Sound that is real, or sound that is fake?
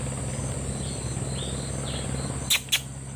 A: real